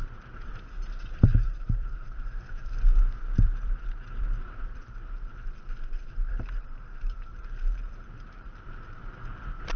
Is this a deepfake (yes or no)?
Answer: yes